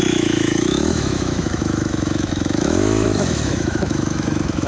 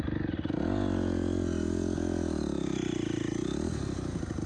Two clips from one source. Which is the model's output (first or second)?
first